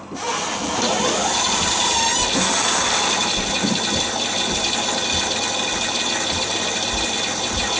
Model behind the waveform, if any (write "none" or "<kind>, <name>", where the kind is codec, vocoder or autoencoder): none